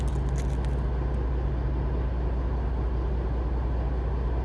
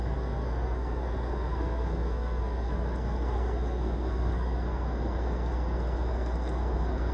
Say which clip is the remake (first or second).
second